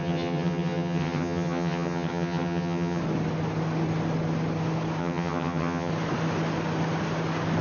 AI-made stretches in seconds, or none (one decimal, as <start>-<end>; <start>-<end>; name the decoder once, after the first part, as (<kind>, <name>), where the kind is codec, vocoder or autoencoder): 0.0-3.0 (vocoder, HiFi-GAN); 5.0-5.9